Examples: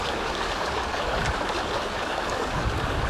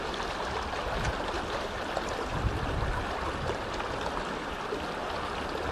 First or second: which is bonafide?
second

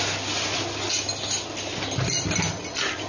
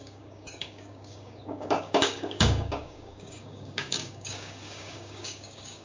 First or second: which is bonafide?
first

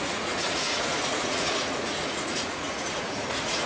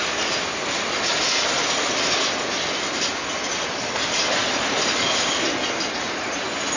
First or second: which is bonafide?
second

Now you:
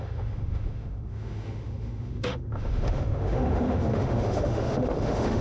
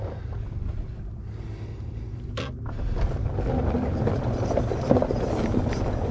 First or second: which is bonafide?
second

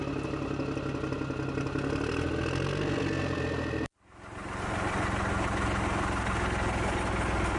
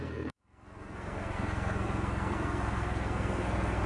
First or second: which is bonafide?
first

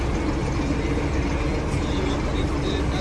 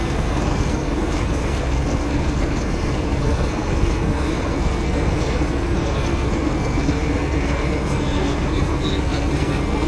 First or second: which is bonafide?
first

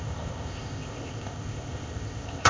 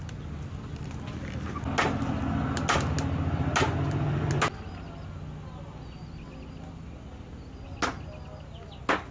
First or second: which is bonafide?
second